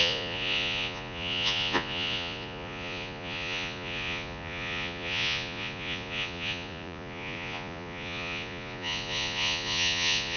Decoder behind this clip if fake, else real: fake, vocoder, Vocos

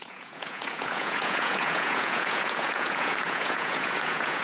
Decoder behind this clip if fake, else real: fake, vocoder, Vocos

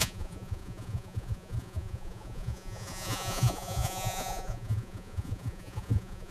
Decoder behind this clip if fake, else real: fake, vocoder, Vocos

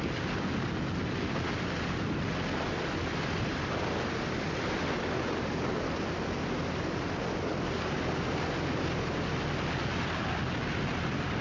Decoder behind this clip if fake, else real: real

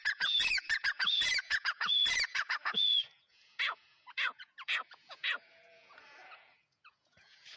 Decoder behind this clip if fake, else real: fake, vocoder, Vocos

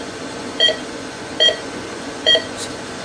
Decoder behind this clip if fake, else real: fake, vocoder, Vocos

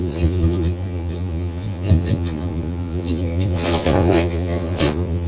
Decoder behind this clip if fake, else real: fake, vocoder, Vocos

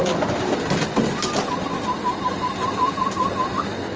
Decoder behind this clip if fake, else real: real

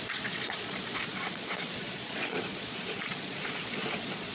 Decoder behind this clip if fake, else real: fake, vocoder, Vocos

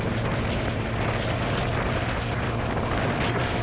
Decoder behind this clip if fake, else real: real